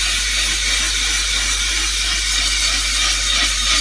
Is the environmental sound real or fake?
real